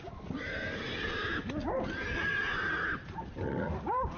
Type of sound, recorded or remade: recorded